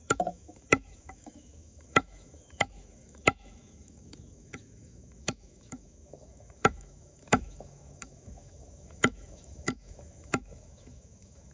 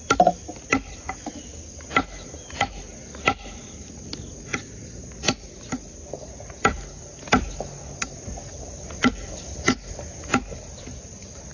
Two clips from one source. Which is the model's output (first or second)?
first